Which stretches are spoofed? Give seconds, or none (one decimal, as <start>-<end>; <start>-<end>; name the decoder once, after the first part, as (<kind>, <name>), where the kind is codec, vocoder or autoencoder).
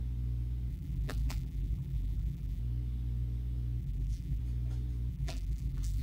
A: 0.7-2.6 (vocoder, BigVGAN v2); 3.8-4.4; 5.1-6.0